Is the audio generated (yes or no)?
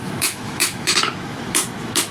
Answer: yes